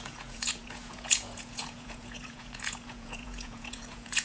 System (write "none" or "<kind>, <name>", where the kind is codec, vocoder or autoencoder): vocoder, Vocos